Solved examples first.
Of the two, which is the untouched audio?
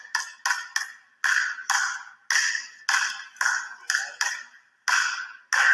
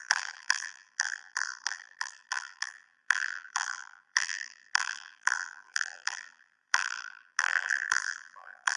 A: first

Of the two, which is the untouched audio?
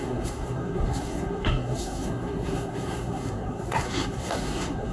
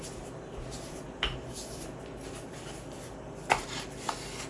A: second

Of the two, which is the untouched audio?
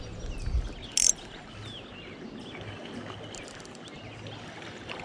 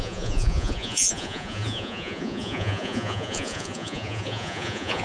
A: first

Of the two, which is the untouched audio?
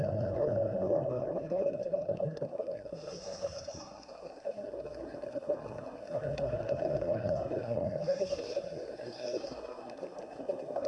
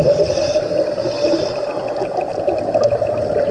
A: second